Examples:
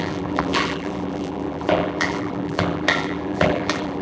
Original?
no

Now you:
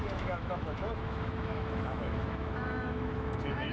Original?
no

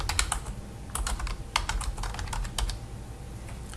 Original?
yes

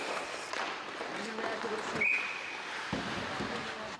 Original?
yes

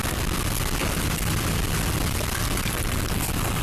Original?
yes